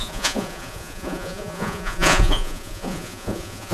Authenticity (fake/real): fake